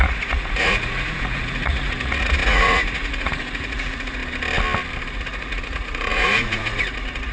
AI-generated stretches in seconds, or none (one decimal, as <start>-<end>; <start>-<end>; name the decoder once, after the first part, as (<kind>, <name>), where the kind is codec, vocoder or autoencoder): 0.0-4.2 (vocoder, Vocos); 5.1-7.3